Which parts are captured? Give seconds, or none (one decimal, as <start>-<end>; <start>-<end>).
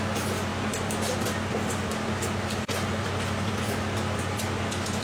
0.0-5.0